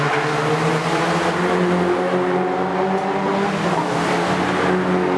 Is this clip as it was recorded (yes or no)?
yes